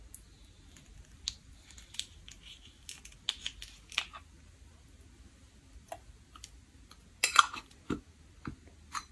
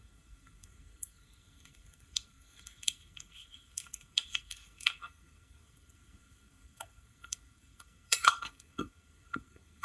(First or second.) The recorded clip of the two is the first